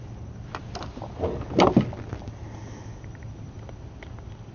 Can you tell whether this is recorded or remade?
recorded